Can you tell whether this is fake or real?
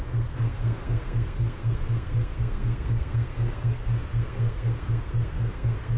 fake